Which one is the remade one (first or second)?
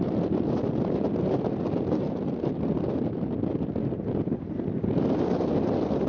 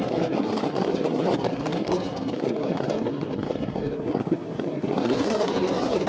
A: second